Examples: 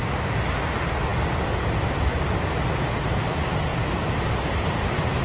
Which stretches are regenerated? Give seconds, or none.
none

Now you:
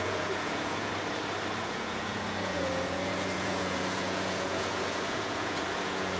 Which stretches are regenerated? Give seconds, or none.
0.0-0.9; 1.6-6.2

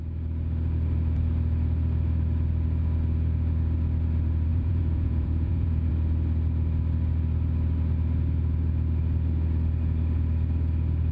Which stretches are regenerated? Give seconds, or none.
4.5-5.9

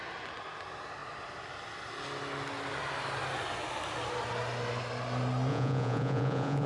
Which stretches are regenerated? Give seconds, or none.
5.5-6.7

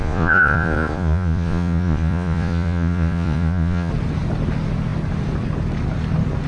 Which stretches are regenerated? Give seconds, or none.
0.0-3.9

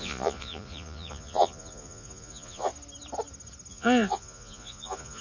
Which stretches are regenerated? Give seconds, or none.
0.0-2.7; 3.7-5.2

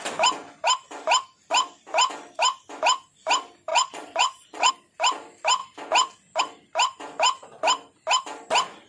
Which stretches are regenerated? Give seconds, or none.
3.7-4.7

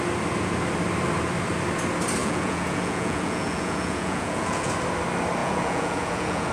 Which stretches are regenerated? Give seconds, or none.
2.2-4.7; 5.4-6.5